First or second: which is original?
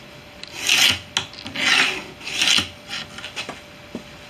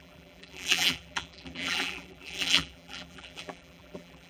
first